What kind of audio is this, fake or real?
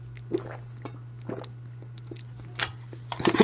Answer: real